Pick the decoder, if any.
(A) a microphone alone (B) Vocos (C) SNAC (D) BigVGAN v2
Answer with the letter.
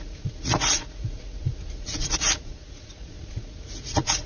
B